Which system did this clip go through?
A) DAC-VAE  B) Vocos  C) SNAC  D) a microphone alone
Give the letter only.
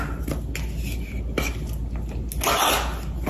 D